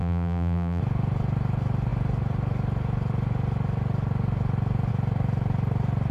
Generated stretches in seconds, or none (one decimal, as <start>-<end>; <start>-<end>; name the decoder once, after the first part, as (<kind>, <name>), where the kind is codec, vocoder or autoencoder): 0.0-0.8 (vocoder, BigVGAN v2)